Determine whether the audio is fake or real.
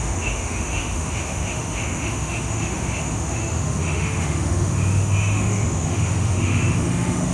fake